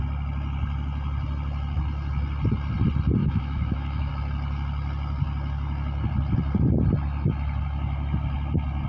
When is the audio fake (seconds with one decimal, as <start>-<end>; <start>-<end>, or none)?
3.2-4.1